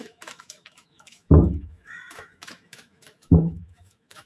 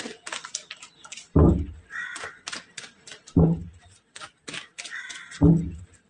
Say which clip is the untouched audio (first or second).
second